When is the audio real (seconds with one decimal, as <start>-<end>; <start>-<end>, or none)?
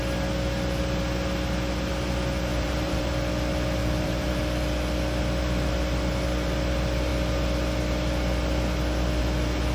0.0-2.5; 3.1-3.8; 4.4-9.7